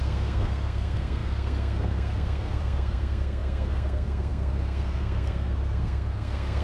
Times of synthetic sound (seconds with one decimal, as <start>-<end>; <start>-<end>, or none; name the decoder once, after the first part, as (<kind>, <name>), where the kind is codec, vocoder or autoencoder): 0.0-6.6 (codec, SNAC)

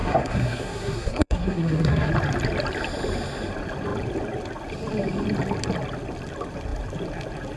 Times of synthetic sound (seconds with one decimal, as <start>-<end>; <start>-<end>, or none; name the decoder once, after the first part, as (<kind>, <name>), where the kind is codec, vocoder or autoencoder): 0.0-2.1 (codec, SNAC)

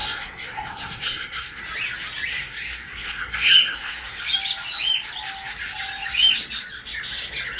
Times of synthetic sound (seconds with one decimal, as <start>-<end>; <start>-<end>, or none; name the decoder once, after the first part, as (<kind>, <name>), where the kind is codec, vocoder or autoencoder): 0.0-1.6 (codec, SNAC); 2.3-4.2